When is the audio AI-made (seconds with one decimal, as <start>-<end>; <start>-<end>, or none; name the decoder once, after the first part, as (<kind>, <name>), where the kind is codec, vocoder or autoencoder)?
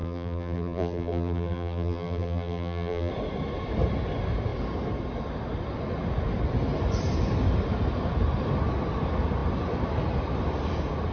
0.0-3.1 (vocoder, BigVGAN v2)